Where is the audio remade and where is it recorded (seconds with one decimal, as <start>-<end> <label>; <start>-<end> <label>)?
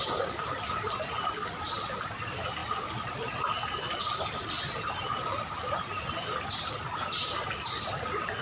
0.0-8.4 recorded